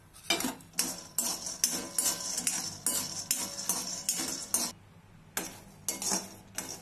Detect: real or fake real